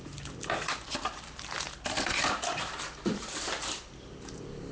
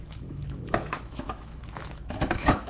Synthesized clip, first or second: second